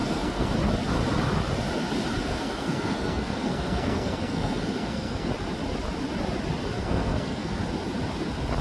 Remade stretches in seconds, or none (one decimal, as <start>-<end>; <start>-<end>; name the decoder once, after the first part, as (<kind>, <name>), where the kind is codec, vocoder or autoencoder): 0.0-0.5 (codec, SNAC); 2.2-5.3; 6.8-7.6